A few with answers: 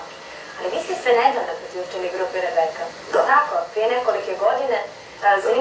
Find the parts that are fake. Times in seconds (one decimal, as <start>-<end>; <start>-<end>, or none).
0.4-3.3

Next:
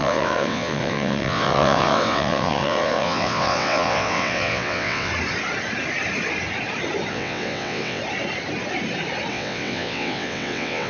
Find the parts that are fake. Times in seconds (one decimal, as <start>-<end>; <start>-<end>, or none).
0.0-5.1; 7.1-8.0; 9.3-10.9

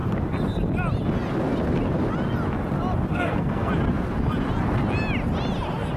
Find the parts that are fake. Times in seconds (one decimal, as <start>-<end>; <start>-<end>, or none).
3.1-3.7

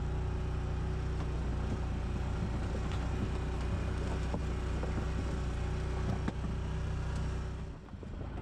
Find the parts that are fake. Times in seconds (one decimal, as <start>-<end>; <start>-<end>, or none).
none